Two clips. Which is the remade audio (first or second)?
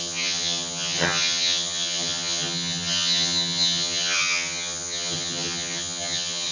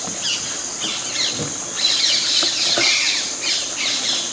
first